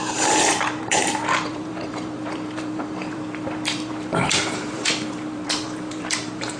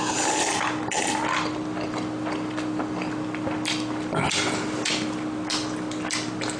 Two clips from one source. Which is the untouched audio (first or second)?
second